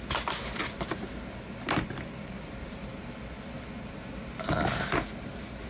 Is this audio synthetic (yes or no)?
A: no